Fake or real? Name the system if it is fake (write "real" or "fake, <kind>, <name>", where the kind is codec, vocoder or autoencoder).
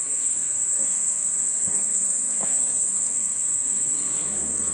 fake, codec, SNAC